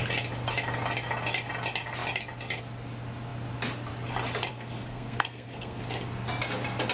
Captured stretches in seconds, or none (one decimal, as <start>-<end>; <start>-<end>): 0.0-4.5; 5.8-6.9